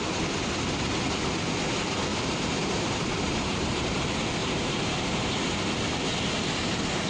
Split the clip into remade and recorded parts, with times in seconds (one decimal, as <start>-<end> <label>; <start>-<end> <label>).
0.0-2.1 recorded; 2.1-4.0 remade; 4.0-4.4 recorded; 4.4-5.3 remade; 5.3-7.1 recorded